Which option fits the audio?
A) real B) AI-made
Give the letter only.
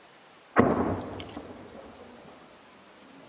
A